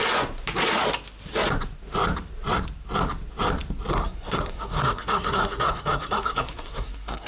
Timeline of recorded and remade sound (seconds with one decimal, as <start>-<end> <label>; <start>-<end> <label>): 0.0-3.9 recorded; 3.9-7.3 remade